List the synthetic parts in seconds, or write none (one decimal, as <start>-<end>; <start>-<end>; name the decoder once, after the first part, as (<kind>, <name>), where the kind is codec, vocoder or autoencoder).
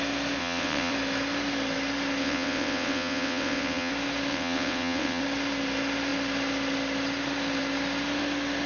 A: 0.4-0.9 (vocoder, WaveNeXt); 2.2-3.9; 4.3-5.2